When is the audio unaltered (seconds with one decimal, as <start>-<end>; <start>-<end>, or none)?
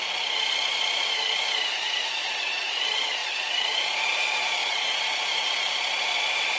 0.0-2.2; 2.8-6.6